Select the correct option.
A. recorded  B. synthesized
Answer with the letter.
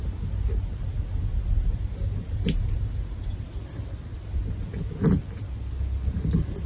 A